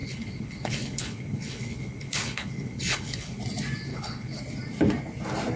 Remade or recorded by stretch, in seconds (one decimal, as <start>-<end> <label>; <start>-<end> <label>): 0.0-3.4 remade; 3.4-3.9 recorded; 3.9-4.4 remade; 4.4-5.6 recorded